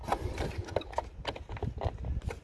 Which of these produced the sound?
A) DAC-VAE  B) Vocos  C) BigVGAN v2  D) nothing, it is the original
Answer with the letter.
D